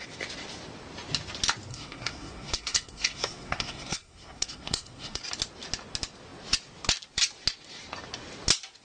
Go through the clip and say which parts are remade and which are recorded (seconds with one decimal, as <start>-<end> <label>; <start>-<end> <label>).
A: 0.0-1.7 recorded; 1.7-5.2 remade; 5.2-8.8 recorded